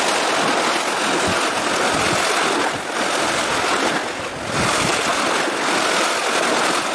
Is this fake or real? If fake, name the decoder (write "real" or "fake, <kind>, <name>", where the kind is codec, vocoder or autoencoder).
real